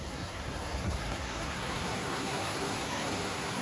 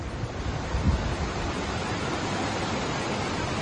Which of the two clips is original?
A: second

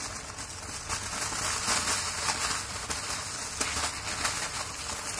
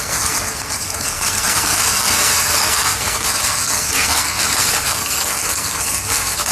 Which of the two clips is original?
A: first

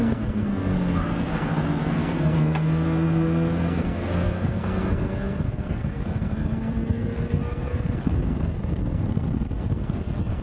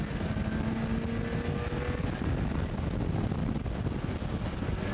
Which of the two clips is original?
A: second